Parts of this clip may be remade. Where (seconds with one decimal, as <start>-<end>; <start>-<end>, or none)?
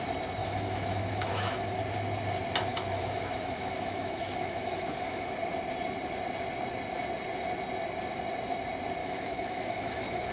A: 0.4-1.8; 2.7-5.3; 9.0-10.3